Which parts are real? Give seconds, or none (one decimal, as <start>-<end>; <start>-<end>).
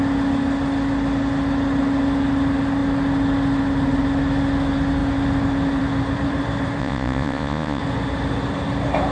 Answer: 0.0-6.8; 7.8-9.1